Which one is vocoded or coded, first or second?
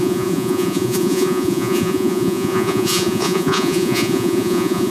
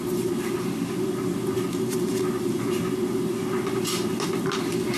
first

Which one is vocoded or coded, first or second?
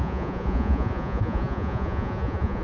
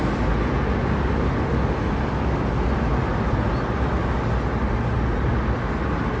first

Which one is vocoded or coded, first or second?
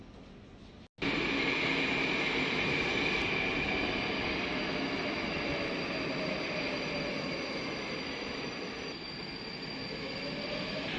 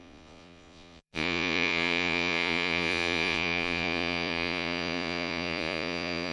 second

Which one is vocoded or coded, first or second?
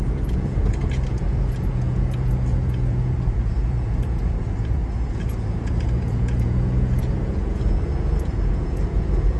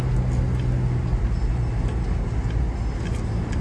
first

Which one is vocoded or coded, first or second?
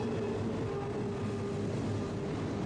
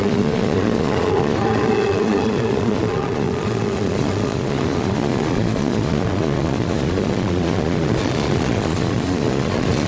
second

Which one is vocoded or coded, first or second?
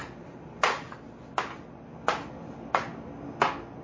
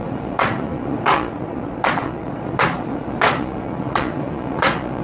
second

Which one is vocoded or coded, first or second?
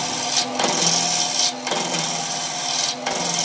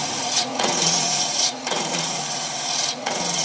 second